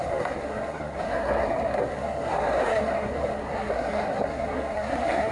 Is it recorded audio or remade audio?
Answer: remade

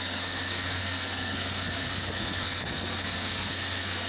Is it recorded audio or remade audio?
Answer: remade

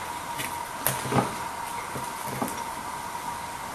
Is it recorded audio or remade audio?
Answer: recorded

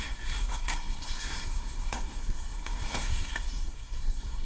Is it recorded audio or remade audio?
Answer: remade